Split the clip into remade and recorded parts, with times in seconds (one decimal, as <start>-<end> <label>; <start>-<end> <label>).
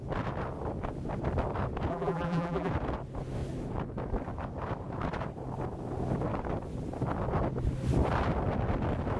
0.0-1.9 recorded; 1.9-2.7 remade; 2.7-9.2 recorded